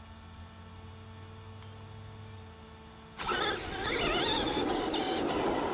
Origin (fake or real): real